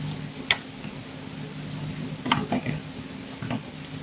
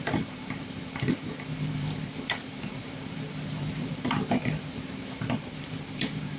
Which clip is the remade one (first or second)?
second